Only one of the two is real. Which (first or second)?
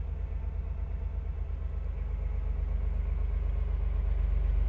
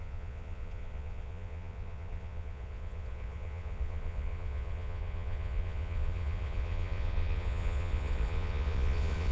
first